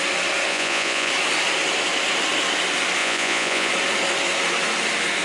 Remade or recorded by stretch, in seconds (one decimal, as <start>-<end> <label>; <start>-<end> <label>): 0.0-0.5 recorded; 0.5-1.1 remade; 1.1-3.0 recorded; 3.0-3.7 remade; 3.7-5.2 recorded